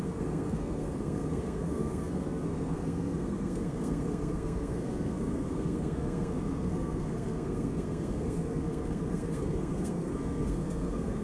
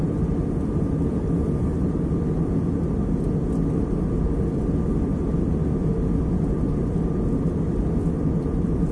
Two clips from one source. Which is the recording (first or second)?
second